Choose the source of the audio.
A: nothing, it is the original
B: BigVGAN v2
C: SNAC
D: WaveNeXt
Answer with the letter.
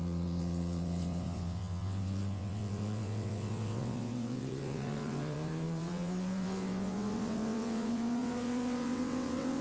D